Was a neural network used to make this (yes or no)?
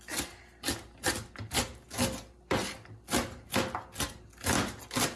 no